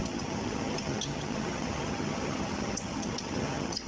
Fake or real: fake